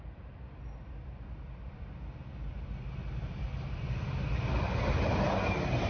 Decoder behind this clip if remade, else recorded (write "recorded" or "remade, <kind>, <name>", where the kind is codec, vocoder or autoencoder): recorded